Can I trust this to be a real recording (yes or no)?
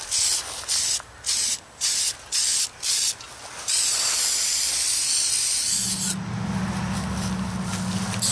yes